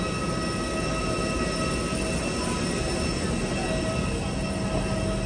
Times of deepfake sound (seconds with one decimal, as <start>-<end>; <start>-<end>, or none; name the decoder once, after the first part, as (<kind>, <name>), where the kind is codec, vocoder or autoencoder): 3.6-4.4 (vocoder, BigVGAN v2)